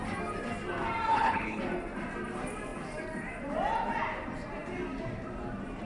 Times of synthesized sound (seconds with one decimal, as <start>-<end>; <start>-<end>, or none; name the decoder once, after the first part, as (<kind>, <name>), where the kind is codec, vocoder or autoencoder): 1.1-1.6 (codec, HILCodec)